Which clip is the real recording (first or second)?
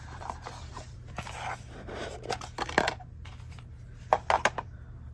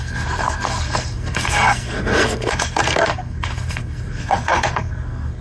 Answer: first